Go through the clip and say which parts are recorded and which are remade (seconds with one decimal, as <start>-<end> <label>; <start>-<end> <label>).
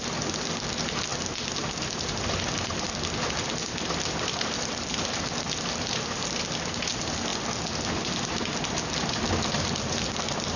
0.0-10.6 recorded